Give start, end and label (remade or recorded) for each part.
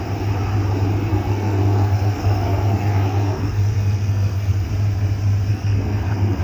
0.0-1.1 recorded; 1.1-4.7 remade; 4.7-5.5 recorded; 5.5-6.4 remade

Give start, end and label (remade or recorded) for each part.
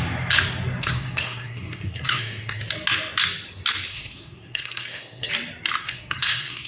0.0-0.8 recorded; 0.8-2.6 remade; 2.6-3.9 recorded; 3.9-5.3 remade; 5.3-5.8 recorded; 5.8-6.7 remade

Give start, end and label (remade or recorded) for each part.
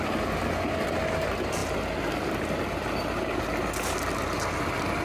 0.0-5.0 recorded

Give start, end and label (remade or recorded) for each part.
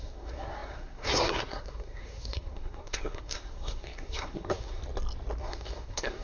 0.0-4.8 remade; 4.8-5.4 recorded; 5.4-6.2 remade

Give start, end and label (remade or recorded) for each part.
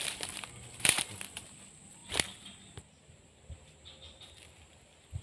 0.0-5.2 recorded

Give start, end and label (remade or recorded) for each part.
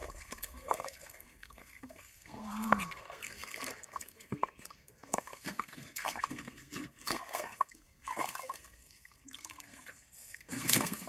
0.0-11.1 remade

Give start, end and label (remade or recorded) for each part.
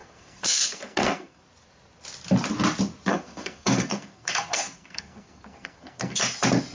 0.0-1.4 remade; 1.4-3.1 recorded; 3.1-6.2 remade; 6.2-6.7 recorded